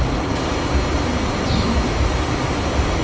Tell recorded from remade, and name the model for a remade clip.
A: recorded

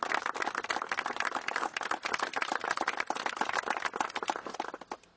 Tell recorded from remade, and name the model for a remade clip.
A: recorded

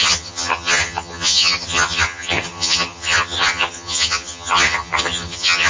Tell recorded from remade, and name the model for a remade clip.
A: remade, vocoder, HiFi-GAN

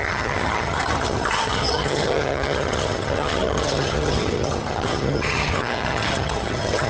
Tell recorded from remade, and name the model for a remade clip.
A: remade, vocoder, HiFi-GAN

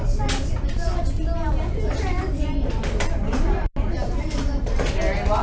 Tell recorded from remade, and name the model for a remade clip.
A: recorded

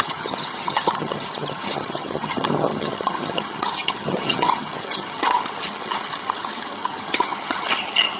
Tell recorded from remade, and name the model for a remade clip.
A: remade, vocoder, HiFi-GAN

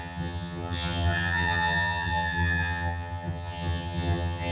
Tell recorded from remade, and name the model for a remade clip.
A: remade, vocoder, HiFi-GAN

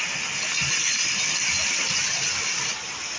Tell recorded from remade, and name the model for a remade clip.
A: recorded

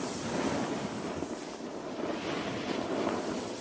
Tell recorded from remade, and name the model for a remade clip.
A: recorded